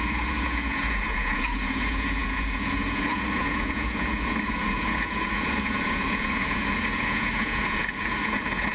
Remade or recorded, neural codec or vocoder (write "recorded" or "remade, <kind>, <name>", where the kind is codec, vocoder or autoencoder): remade, vocoder, Vocos